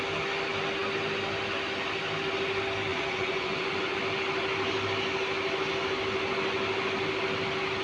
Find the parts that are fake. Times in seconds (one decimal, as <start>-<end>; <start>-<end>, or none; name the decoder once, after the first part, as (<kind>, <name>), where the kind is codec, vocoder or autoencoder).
2.9-4.0 (vocoder, Vocos)